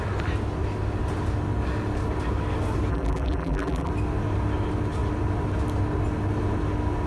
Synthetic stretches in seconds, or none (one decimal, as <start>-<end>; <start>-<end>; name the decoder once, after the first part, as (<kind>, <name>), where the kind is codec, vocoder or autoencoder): 2.9-3.9 (vocoder, BigVGAN v2)